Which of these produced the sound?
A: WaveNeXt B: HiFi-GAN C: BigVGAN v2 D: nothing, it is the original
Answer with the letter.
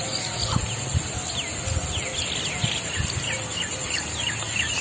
D